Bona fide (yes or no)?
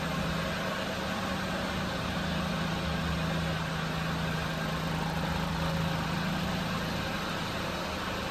yes